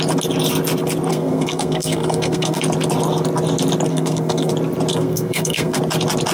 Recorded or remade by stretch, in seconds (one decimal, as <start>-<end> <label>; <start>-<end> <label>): 0.0-1.1 recorded; 1.1-2.6 remade; 2.6-3.9 recorded; 3.9-4.5 remade; 4.5-4.9 recorded; 4.9-5.8 remade; 5.8-6.3 recorded